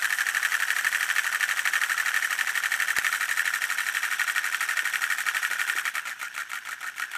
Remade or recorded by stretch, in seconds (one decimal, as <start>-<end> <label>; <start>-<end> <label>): 0.0-0.5 recorded; 0.5-1.1 remade; 1.1-7.2 recorded

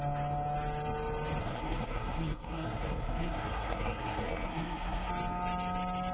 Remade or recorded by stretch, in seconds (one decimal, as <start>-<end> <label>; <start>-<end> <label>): 0.0-1.4 recorded; 1.4-5.1 remade; 5.1-6.1 recorded